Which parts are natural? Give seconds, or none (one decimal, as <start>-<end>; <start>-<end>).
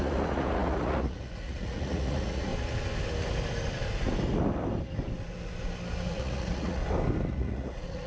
2.5-6.1; 6.8-7.3